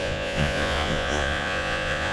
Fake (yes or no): yes